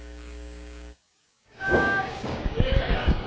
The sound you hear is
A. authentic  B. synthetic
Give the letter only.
B